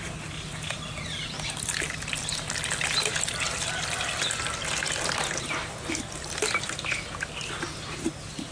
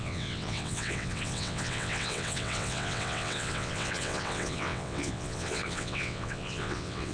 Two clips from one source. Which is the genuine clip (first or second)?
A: first